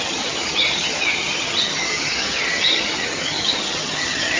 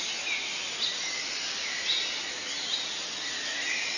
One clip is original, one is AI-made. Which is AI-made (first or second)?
first